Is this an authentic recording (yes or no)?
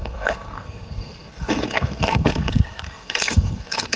no